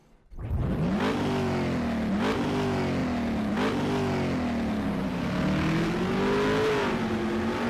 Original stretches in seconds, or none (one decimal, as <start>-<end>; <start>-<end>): 0.0-7.7